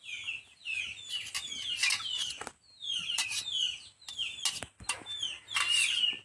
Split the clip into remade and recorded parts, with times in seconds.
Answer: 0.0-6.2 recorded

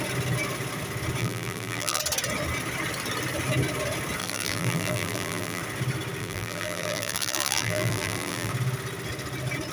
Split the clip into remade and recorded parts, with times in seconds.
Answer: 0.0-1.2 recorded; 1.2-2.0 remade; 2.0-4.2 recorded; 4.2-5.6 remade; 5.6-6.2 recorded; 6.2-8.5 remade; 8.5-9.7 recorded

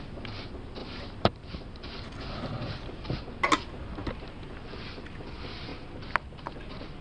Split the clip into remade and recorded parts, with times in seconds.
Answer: 0.0-0.8 recorded; 0.8-3.2 remade; 3.2-7.0 recorded

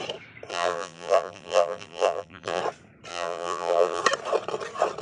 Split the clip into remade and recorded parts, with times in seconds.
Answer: 0.0-0.5 recorded; 0.5-2.6 remade; 2.6-3.1 recorded; 3.1-4.0 remade; 4.0-5.0 recorded